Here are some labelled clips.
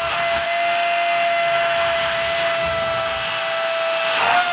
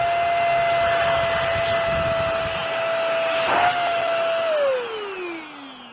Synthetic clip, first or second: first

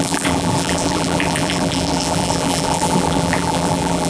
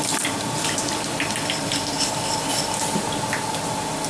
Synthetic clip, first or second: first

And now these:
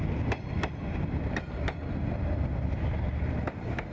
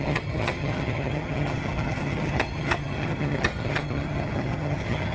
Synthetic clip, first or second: second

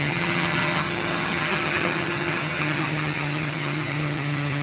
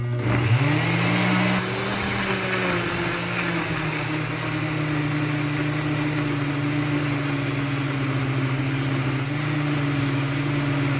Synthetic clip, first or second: first